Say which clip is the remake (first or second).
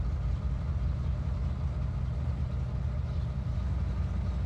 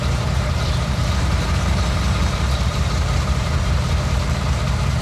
second